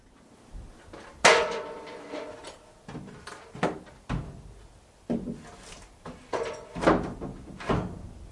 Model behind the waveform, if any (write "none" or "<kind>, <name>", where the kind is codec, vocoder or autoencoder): none